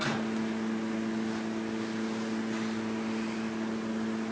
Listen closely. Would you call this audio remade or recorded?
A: recorded